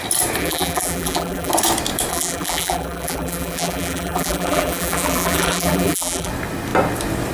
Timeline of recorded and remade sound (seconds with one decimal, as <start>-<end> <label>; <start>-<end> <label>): 0.0-0.4 recorded; 0.4-1.5 remade; 1.5-2.1 recorded; 2.1-6.3 remade; 6.3-7.3 recorded